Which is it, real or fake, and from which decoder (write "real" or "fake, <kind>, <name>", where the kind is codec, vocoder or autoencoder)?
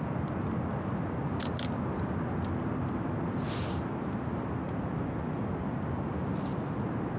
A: real